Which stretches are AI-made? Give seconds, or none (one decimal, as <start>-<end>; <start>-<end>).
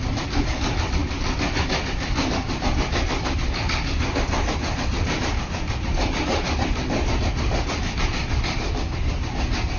none